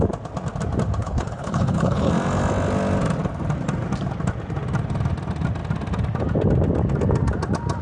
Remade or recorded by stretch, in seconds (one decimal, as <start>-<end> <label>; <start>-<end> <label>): 0.0-1.0 recorded; 1.0-2.1 remade; 2.1-7.8 recorded